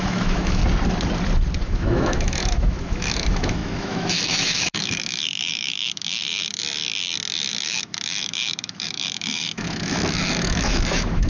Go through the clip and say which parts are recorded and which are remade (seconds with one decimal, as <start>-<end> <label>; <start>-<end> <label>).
0.0-0.6 remade; 0.6-1.6 recorded; 1.6-6.6 remade; 6.6-7.5 recorded; 7.5-11.3 remade